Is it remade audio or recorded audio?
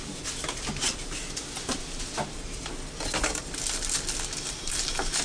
recorded